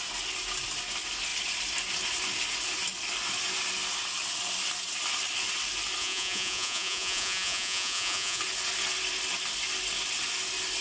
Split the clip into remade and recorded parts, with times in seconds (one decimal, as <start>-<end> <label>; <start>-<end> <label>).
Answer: 0.0-6.0 recorded; 6.0-8.4 remade; 8.4-10.8 recorded